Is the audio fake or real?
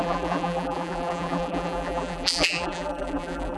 fake